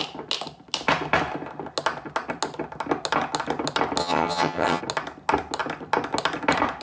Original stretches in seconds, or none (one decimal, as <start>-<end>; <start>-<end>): 0.0-4.0; 4.8-6.8